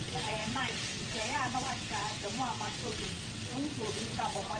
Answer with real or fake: fake